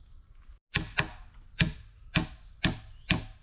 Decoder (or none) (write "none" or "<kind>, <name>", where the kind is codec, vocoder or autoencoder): none